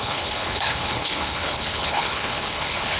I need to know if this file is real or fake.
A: fake